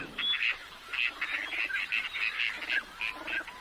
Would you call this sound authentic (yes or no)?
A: yes